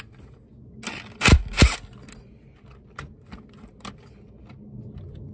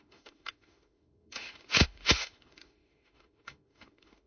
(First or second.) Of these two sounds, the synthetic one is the second